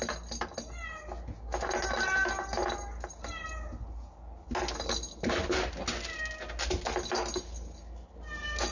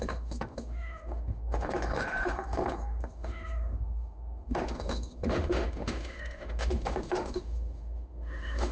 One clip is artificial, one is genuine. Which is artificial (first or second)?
second